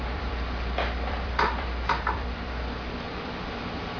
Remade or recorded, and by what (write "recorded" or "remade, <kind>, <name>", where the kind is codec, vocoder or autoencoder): remade, vocoder, BigVGAN v2